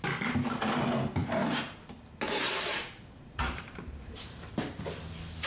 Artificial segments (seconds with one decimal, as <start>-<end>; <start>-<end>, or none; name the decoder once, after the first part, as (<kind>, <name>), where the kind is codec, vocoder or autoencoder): 1.2-4.5 (vocoder, BigVGAN v2)